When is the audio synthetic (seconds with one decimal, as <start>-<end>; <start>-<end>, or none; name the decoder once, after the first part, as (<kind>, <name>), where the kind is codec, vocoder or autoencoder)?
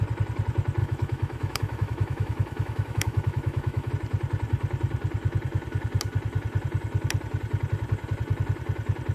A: 0.8-3.9 (autoencoder, DAC-VAE)